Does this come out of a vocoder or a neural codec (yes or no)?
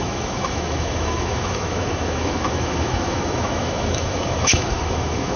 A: yes